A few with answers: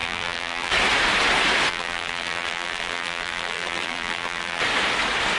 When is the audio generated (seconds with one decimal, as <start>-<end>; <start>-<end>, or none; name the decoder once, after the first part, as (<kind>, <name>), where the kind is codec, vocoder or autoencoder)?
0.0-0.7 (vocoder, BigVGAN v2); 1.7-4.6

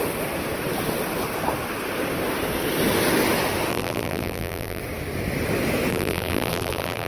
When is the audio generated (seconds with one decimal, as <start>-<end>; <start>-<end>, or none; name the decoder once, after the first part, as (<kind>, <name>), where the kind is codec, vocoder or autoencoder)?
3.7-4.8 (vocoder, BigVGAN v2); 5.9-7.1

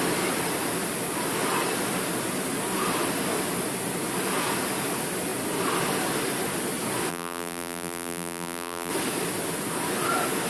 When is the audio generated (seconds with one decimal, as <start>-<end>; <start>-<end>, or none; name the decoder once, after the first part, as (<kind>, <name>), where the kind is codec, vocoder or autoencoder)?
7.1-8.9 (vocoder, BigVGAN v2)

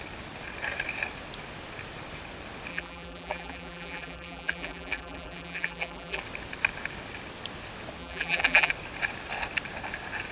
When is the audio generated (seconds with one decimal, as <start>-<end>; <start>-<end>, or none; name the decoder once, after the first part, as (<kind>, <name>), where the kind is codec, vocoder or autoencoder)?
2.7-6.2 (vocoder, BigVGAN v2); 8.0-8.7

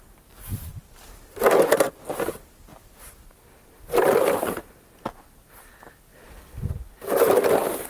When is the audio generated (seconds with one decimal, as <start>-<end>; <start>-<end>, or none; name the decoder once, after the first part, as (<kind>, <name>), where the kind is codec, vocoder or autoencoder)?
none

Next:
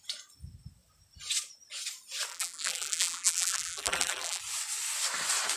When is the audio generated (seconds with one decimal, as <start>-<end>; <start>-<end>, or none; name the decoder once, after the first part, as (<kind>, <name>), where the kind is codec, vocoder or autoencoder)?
2.3-4.4 (vocoder, BigVGAN v2)